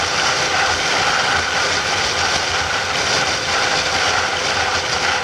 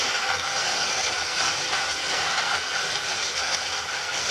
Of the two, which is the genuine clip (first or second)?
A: first